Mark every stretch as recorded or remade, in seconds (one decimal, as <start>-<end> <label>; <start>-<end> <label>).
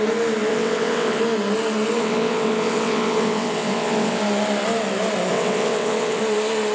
0.0-0.5 recorded; 0.5-1.2 remade; 1.2-2.0 recorded; 2.0-4.2 remade; 4.2-5.3 recorded; 5.3-6.2 remade; 6.2-6.7 recorded